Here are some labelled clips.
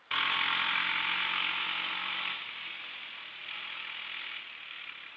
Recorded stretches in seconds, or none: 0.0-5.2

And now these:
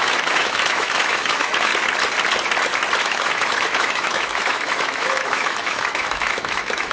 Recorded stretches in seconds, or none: 1.7-3.0

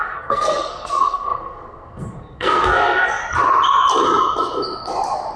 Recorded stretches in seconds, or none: 3.2-5.4

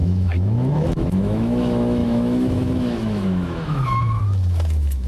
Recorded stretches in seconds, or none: none

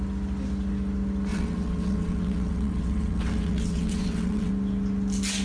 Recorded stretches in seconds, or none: 0.0-1.3; 4.5-5.4

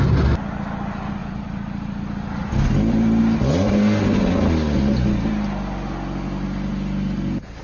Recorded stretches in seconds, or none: 0.0-7.6

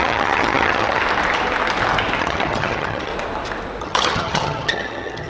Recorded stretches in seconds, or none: 1.0-2.2; 3.1-3.8